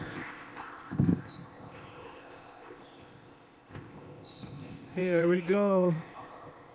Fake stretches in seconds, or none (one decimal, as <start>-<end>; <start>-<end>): 0.0-6.7